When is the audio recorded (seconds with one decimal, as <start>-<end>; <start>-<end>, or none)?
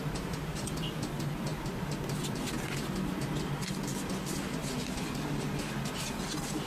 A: 0.0-6.7